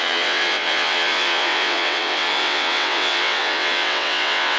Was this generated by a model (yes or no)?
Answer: yes